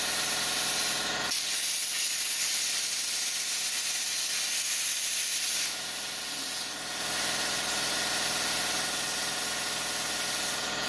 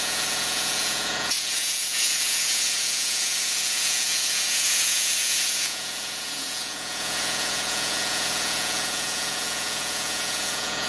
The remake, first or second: second